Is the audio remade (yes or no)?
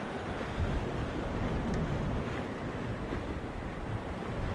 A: no